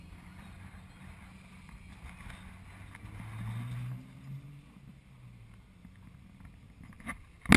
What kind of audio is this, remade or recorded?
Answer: recorded